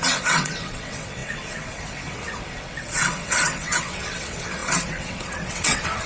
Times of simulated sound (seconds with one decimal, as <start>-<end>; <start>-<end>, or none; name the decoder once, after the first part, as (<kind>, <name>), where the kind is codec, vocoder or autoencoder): 0.0-6.1 (vocoder, WaveNeXt)